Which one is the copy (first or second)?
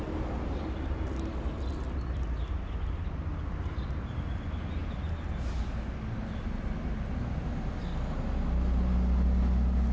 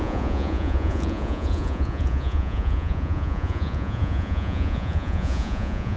second